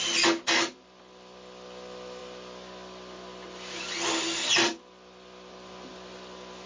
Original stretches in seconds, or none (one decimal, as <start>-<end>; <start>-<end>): 0.0-6.7